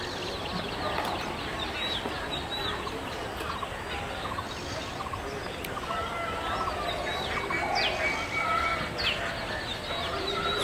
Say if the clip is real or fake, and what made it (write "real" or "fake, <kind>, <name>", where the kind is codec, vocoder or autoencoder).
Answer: real